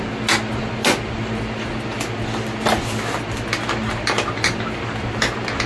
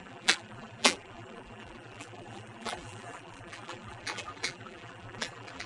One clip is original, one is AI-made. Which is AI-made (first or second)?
second